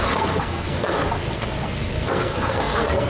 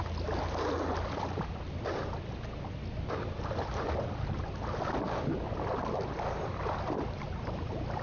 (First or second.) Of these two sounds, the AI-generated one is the first